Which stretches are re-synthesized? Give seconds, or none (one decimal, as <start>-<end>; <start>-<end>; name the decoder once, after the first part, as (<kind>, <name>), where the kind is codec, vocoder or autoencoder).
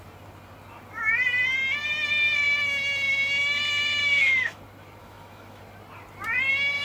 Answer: 4.0-4.6 (autoencoder, DAC-VAE); 5.0-5.6